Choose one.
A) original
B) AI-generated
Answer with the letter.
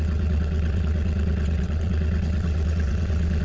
B